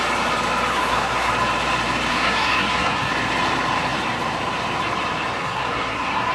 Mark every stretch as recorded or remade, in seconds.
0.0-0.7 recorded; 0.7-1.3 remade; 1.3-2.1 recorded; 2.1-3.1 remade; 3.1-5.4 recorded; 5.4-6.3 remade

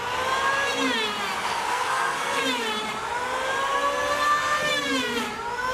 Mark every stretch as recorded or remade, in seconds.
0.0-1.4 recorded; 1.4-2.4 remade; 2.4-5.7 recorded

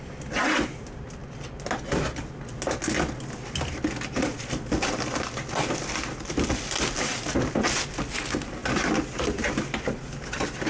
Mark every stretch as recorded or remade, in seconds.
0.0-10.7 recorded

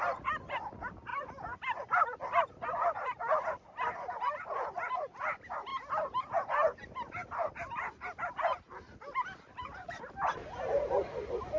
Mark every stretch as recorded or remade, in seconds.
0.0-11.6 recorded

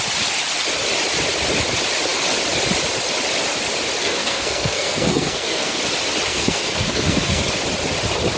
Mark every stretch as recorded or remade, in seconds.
0.0-4.0 recorded; 4.0-5.8 remade; 5.8-6.3 recorded; 6.3-7.4 remade; 7.4-8.4 recorded

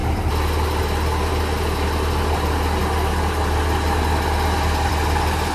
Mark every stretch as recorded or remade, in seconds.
0.0-5.5 recorded

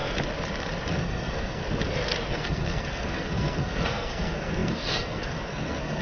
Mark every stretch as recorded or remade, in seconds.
0.0-0.9 recorded; 0.9-1.6 remade; 1.6-2.3 recorded; 2.3-6.0 remade